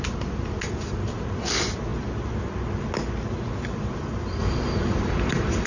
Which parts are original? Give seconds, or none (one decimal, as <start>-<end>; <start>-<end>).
0.0-4.4